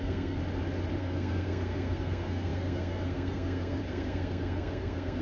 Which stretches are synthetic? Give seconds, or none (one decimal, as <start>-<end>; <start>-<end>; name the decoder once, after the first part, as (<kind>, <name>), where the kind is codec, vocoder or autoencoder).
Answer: 0.0-0.4 (codec, SNAC); 1.0-5.2